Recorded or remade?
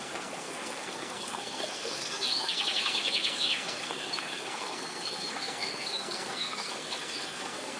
remade